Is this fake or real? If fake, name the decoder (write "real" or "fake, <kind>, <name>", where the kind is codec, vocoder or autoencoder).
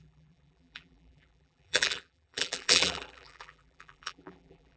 fake, vocoder, BigVGAN v2